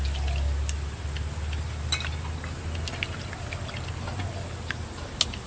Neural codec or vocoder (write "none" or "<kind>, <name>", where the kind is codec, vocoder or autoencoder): none